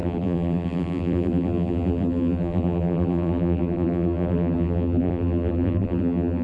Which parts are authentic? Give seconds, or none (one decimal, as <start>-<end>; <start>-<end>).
none